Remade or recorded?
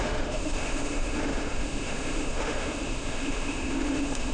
remade